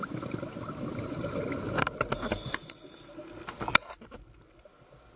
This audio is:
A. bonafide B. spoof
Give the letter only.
A